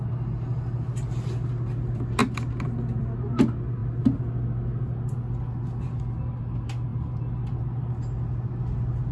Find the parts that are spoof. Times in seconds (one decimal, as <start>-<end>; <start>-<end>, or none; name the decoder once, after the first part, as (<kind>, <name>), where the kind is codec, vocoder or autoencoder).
none